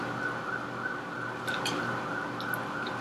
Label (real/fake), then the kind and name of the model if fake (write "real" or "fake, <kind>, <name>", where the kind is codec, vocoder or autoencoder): real